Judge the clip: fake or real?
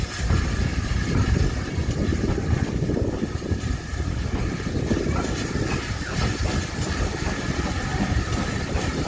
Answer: real